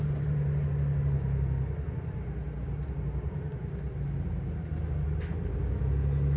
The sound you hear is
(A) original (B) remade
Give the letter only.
A